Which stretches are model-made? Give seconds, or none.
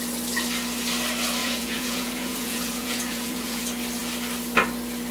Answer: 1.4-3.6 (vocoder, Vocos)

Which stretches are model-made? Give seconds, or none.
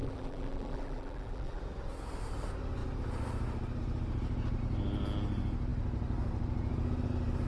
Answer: 0.0-1.6 (vocoder, BigVGAN v2)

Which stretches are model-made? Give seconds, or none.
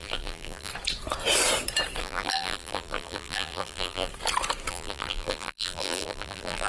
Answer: 0.0-0.7 (vocoder, BigVGAN v2); 2.0-4.1; 4.7-6.7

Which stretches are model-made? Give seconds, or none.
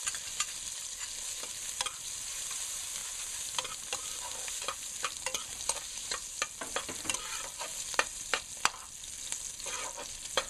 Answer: none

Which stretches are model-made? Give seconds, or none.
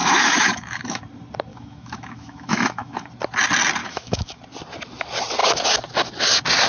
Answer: 0.0-1.0 (autoencoder, DAC-VAE); 1.5-3.1; 3.8-4.4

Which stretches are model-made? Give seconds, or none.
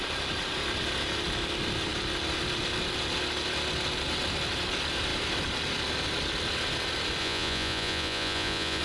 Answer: 7.2-8.8 (vocoder, Vocos)